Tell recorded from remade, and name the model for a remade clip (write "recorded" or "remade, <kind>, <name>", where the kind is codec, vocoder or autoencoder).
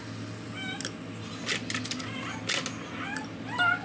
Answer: recorded